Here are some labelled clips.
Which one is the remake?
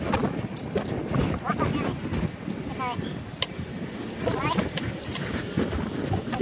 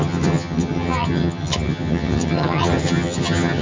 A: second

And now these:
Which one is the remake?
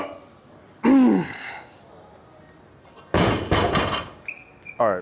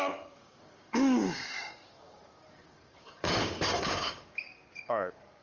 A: second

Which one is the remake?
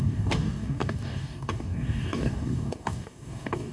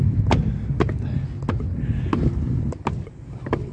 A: first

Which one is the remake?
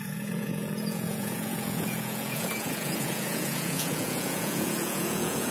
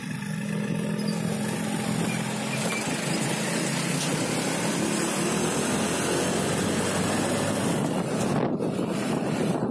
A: first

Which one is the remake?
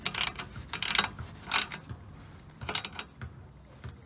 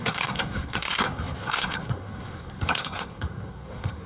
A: second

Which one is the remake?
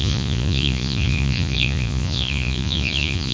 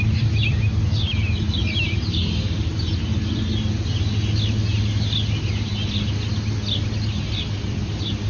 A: first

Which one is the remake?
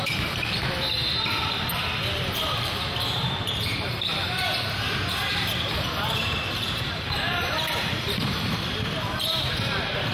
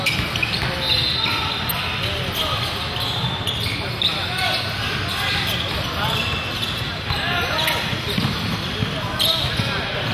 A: first